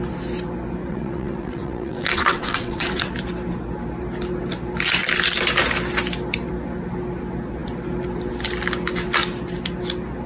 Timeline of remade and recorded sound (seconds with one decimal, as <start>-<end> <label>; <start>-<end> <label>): 0.0-0.8 recorded; 0.8-3.1 remade; 3.1-10.3 recorded